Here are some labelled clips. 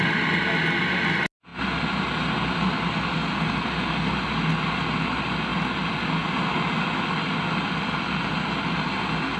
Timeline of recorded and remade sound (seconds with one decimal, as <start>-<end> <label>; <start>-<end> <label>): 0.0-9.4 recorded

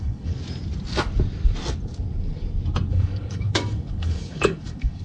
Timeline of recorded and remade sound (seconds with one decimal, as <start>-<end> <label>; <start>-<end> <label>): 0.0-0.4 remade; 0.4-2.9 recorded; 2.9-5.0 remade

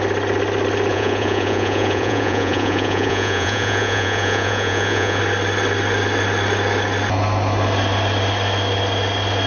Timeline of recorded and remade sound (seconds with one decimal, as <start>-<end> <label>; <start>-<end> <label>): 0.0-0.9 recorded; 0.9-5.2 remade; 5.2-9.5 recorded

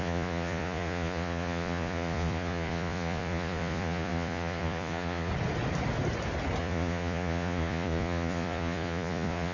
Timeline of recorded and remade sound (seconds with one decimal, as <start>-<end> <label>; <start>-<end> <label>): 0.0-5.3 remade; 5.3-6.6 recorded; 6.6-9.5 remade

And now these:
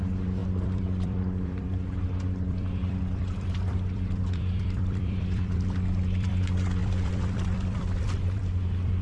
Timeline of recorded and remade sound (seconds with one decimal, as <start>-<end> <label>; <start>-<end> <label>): 0.0-9.0 remade

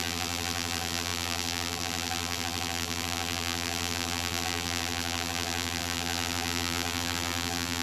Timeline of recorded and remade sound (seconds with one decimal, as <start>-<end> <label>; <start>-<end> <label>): 0.0-7.8 remade